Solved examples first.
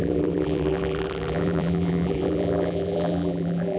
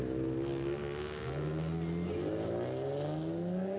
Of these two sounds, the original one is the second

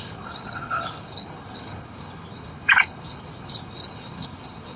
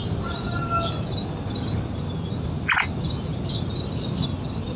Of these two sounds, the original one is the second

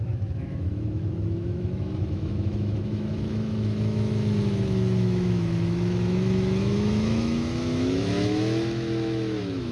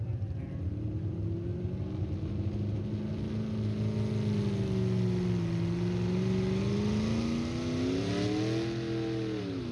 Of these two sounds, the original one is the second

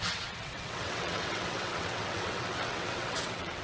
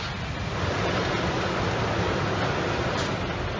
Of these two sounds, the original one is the second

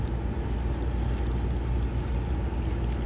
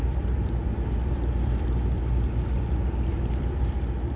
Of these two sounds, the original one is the first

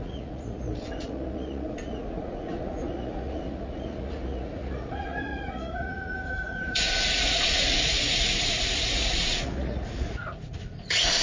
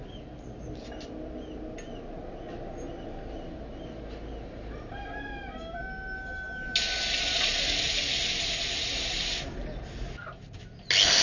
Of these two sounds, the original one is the second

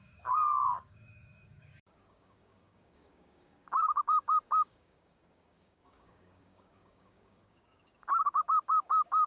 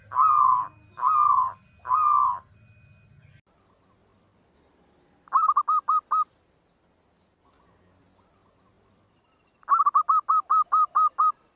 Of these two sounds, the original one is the second